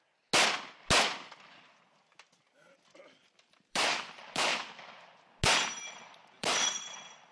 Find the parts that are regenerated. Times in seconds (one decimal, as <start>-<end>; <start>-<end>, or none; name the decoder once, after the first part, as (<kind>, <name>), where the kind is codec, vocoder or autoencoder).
3.2-5.1 (vocoder, BigVGAN v2); 6.2-7.3